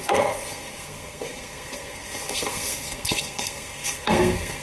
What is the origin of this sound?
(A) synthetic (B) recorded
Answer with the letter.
A